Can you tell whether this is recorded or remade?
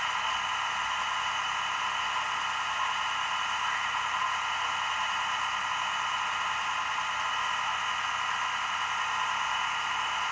recorded